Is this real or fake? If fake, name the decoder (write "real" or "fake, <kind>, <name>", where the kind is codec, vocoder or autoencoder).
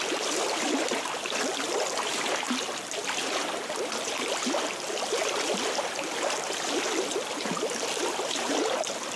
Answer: real